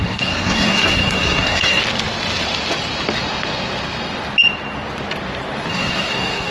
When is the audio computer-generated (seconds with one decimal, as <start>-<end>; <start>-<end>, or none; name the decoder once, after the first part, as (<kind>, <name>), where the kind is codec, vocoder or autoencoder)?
0.0-1.8 (codec, SNAC); 5.7-6.5